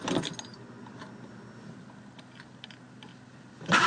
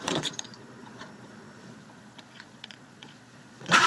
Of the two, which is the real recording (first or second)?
first